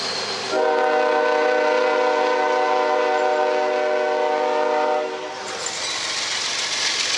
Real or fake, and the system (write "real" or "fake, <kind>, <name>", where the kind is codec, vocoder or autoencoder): real